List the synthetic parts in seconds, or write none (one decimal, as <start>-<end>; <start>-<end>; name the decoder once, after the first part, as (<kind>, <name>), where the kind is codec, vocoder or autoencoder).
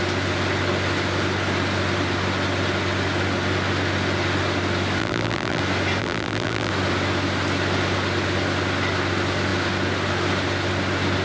5.0-5.6 (vocoder, BigVGAN v2); 6.0-6.7